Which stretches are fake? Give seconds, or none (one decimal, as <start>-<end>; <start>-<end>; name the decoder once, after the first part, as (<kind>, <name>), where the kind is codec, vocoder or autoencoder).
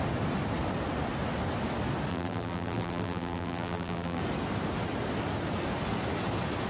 2.1-4.2 (vocoder, BigVGAN v2)